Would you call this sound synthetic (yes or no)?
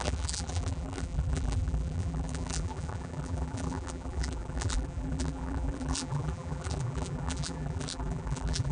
yes